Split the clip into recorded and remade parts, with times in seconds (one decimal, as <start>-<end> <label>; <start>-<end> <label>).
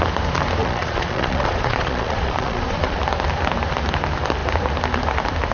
0.0-0.6 recorded; 0.6-3.0 remade; 3.0-5.5 recorded